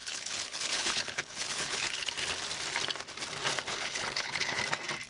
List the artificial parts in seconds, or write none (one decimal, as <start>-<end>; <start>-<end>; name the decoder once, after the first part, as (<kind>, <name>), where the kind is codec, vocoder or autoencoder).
0.0-2.1 (codec, HILCodec); 3.7-4.6